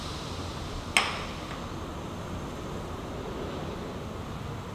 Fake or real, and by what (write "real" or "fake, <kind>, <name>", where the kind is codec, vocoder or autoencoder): real